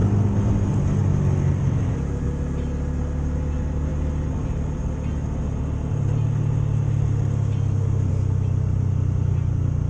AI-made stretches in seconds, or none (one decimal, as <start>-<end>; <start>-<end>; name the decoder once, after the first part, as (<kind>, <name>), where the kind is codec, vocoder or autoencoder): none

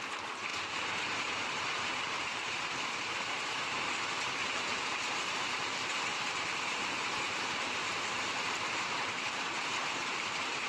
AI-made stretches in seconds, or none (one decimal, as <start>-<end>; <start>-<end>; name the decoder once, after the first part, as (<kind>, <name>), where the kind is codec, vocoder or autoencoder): 0.5-3.2 (vocoder, BigVGAN v2); 4.4-5.6; 6.1-10.7

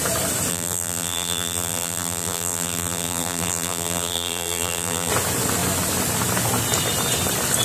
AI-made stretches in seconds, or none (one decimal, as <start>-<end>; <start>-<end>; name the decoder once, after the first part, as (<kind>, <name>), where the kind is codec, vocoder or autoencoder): 0.5-5.1 (vocoder, BigVGAN v2)

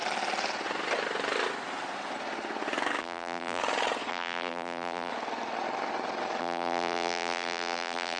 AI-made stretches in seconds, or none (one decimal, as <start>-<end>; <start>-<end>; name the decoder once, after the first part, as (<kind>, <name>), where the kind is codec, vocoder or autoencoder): 3.0-3.6 (vocoder, BigVGAN v2); 4.1-5.1; 6.4-8.2

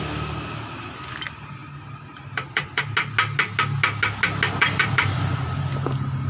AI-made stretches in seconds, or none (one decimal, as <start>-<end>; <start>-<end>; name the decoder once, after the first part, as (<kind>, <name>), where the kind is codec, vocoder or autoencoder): 1.6-2.8 (vocoder, BigVGAN v2); 4.6-5.6